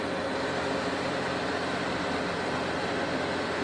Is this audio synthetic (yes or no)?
no